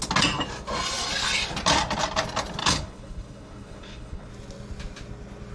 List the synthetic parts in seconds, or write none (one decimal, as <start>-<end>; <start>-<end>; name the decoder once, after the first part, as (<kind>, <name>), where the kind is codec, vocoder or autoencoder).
2.6-4.3 (codec, HILCodec)